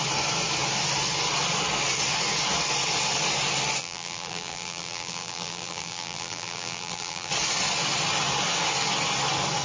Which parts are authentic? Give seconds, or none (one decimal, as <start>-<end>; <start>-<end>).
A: 0.0-3.8; 7.3-9.6